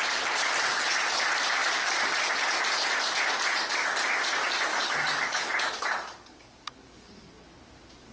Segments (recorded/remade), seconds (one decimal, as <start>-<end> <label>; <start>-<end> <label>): 0.0-4.7 recorded; 4.7-7.1 remade; 7.1-8.1 recorded